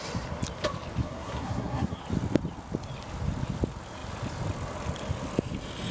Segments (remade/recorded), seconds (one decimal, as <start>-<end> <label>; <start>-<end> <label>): 0.0-1.0 recorded; 1.0-2.0 remade; 2.0-5.9 recorded